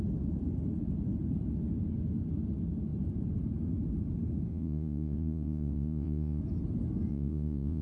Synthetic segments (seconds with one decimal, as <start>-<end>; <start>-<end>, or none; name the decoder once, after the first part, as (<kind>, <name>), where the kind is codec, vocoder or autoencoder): 4.5-6.4 (vocoder, Vocos); 7.1-7.8